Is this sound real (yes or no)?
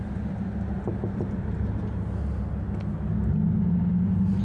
yes